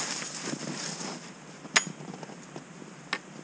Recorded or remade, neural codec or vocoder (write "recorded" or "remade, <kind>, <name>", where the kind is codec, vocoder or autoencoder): recorded